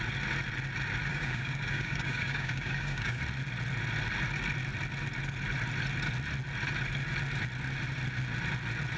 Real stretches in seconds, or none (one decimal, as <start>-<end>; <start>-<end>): 0.0-1.1; 3.2-9.0